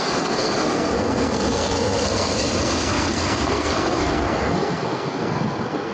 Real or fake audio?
fake